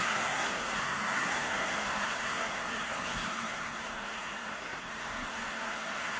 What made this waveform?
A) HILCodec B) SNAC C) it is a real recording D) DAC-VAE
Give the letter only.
B